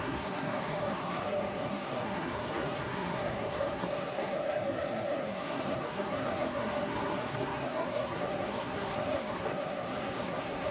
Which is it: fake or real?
fake